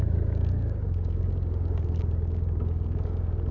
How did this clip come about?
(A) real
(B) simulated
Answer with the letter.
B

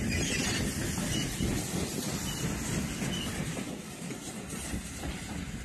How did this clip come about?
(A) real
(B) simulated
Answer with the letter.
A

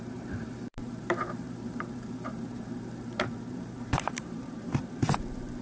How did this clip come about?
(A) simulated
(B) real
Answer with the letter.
A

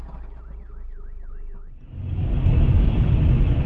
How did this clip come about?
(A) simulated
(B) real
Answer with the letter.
B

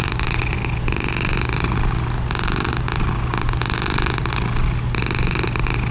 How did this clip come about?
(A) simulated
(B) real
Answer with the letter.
B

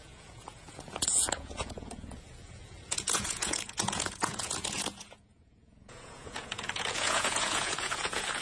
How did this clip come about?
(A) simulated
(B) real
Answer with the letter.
A